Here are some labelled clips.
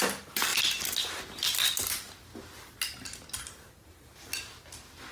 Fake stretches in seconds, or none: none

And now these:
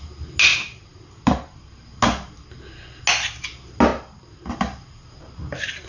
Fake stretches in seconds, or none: none

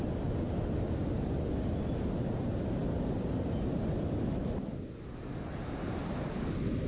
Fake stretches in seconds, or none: none

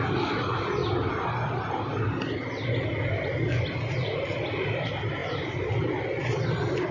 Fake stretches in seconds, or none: none

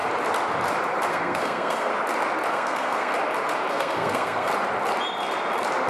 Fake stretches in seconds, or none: 1.1-1.9 (codec, SNAC); 2.5-3.1; 3.7-4.5

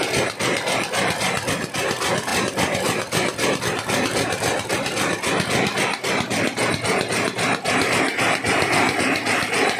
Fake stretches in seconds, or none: none

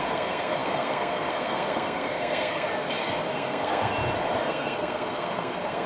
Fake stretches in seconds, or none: 0.0-2.7 (codec, SNAC); 3.3-3.9; 4.4-5.9

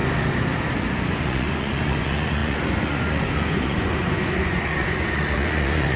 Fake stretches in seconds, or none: 1.1-6.0 (vocoder, Vocos)